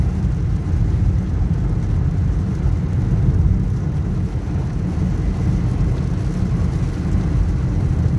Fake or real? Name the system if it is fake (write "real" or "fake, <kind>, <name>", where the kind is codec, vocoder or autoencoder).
real